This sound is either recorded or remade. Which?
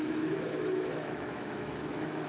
remade